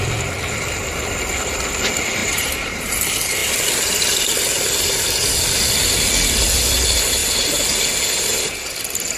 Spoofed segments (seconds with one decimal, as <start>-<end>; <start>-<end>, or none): 2.2-2.9